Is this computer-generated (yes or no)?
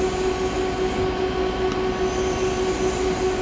no